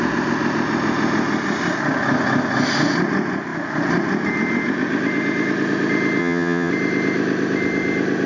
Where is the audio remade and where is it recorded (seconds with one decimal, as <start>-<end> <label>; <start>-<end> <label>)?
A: 0.0-6.2 recorded; 6.2-6.7 remade; 6.7-8.3 recorded